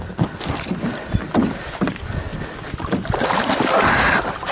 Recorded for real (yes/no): yes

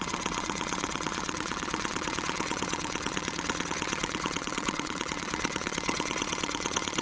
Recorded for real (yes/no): no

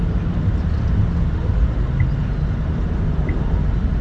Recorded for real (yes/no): yes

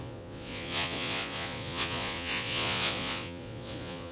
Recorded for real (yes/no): no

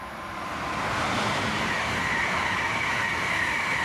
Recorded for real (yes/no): yes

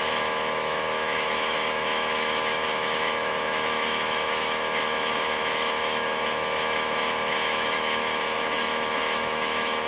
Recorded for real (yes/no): no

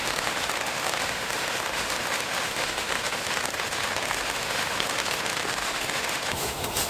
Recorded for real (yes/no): no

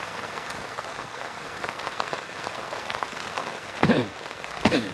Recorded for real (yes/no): no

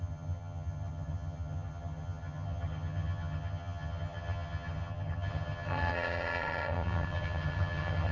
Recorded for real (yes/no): no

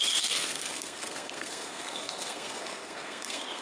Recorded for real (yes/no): no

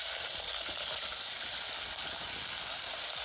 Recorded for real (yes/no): yes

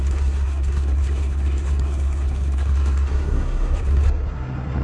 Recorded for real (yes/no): no